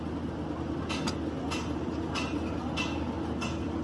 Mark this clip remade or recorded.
recorded